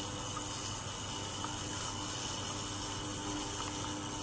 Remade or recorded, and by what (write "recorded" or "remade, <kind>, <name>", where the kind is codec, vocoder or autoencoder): recorded